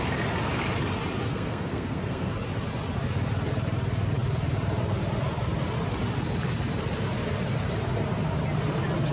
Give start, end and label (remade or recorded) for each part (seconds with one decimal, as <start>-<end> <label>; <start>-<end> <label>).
0.0-1.3 recorded; 1.3-2.3 remade; 2.3-9.1 recorded